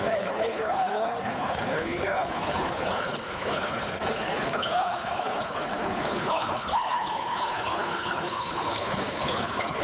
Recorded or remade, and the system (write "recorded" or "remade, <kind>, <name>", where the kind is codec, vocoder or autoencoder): remade, codec, HILCodec